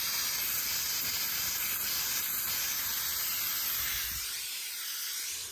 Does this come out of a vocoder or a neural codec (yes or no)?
no